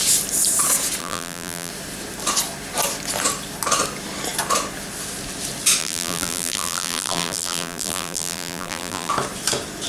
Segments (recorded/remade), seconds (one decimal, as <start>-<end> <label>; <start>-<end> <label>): 0.0-1.0 recorded; 1.0-1.7 remade; 1.7-5.8 recorded; 5.8-9.1 remade; 9.1-9.9 recorded